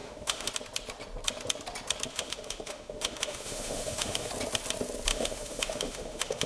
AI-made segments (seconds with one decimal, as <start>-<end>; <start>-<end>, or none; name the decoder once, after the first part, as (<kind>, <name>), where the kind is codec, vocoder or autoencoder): 0.0-0.5 (autoencoder, DAC-VAE); 2.1-4.3; 5.1-6.5